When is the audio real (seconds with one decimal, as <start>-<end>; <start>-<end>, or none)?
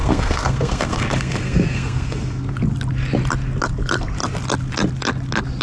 2.5-5.6